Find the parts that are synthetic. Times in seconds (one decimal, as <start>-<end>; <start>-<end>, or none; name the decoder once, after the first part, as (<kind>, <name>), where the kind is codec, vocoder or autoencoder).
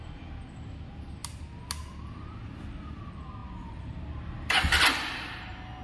none